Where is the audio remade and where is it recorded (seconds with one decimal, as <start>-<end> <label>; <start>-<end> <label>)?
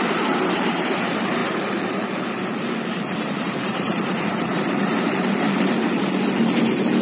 0.0-7.0 remade